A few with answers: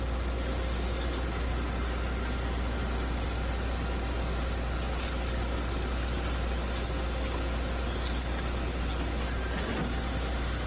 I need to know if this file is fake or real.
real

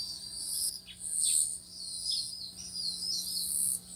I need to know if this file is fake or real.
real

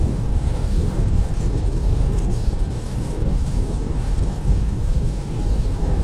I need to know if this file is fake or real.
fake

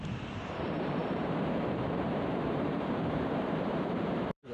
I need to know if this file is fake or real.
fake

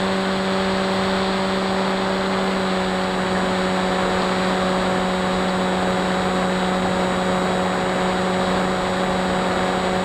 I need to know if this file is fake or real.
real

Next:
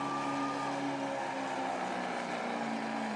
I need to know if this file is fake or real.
real